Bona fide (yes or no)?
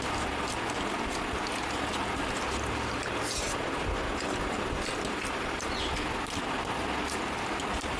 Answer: yes